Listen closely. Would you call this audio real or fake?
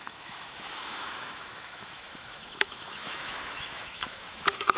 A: fake